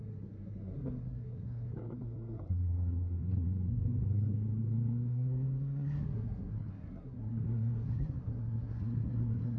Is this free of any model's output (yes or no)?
no